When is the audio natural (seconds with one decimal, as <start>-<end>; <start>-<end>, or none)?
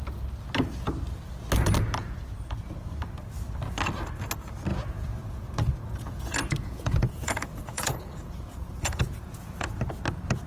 0.0-2.0; 2.6-4.7; 9.8-10.5